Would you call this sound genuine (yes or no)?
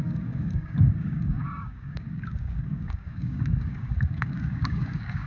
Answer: no